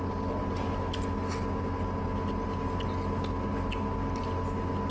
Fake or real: real